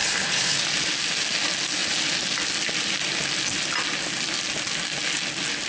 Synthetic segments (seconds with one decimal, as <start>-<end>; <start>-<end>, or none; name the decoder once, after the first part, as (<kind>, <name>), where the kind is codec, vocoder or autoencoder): 0.0-0.6 (codec, HILCodec)